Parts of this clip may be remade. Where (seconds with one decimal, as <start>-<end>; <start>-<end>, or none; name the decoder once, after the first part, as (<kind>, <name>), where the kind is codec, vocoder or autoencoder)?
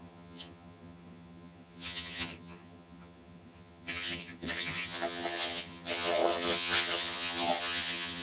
0.0-8.2 (vocoder, HiFi-GAN)